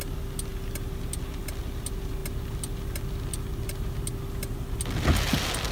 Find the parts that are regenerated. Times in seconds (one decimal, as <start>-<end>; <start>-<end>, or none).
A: none